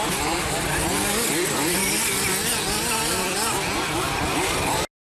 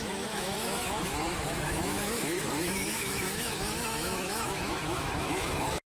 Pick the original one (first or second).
first